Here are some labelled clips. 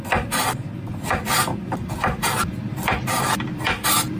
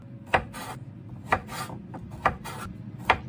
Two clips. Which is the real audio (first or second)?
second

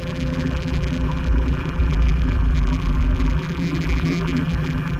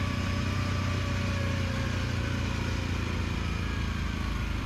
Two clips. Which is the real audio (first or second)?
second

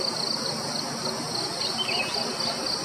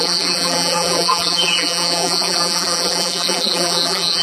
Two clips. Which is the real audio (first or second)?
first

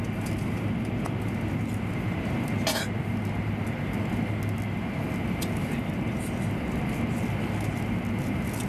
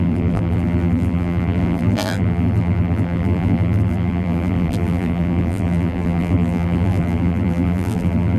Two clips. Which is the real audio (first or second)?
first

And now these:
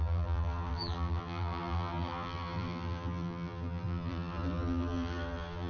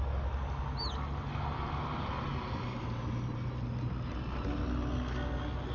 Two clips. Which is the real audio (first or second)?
second